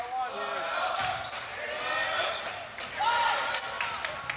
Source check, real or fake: real